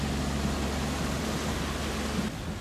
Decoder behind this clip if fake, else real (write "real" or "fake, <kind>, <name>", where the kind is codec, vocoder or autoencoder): real